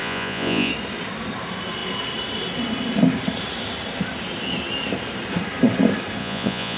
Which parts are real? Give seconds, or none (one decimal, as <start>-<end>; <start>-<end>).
0.7-6.2